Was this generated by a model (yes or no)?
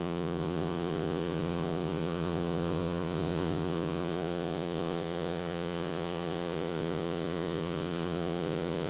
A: yes